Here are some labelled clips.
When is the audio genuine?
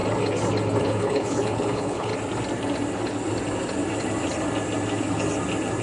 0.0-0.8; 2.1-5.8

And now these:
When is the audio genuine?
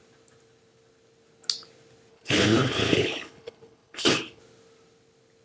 0.0-2.1; 4.4-5.4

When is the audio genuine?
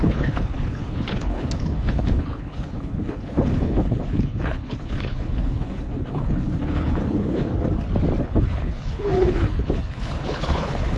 7.5-8.2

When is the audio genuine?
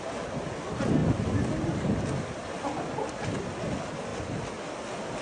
0.0-5.2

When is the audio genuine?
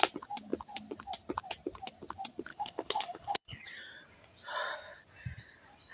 0.0-2.5; 3.6-5.9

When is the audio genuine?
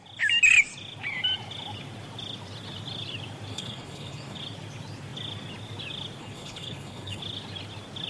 0.0-3.5; 4.4-6.2; 7.2-8.1